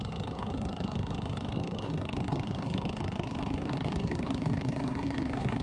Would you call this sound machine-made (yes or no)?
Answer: yes